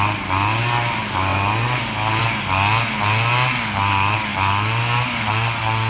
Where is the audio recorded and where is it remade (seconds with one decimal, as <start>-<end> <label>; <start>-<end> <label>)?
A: 0.0-4.3 recorded; 4.3-5.9 remade